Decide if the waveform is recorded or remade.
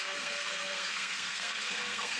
remade